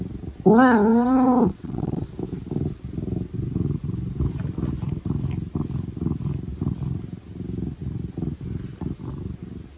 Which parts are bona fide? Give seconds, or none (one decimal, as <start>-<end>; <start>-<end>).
0.0-0.9; 2.1-9.8